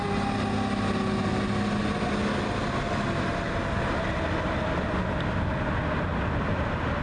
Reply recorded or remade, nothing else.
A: recorded